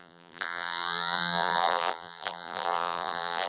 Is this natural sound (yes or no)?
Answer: no